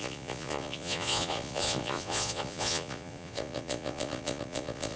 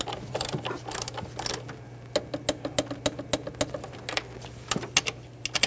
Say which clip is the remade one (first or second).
first